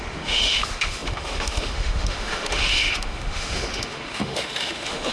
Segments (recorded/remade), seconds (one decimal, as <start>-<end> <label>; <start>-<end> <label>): 0.0-5.1 remade